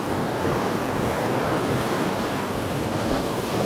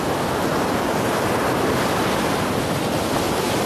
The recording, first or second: second